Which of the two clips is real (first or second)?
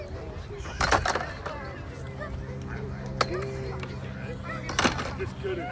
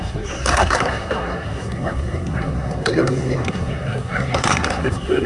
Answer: first